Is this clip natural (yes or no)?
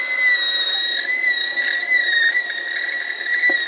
yes